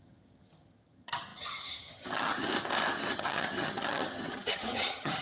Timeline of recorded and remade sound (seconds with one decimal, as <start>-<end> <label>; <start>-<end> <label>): 0.0-2.5 remade; 2.5-3.1 recorded; 3.1-5.2 remade

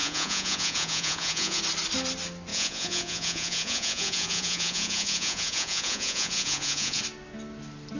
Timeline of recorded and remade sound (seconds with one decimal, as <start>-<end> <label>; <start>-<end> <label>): 0.0-1.6 remade; 1.6-2.5 recorded; 2.5-7.0 remade; 7.0-8.0 recorded

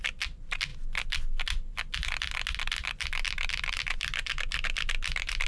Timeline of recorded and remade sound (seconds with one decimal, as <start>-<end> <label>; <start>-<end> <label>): 0.0-5.5 recorded